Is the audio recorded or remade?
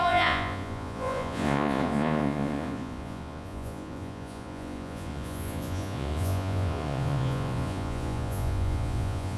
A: remade